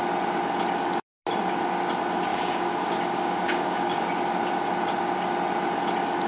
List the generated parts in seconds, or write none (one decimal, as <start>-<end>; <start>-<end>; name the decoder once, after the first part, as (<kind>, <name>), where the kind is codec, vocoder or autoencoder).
2.3-4.1 (codec, DAC)